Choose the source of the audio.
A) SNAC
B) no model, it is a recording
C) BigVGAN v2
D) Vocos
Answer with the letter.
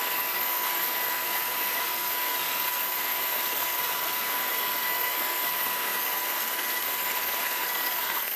A